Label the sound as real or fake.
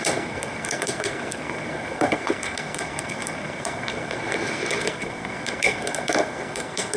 fake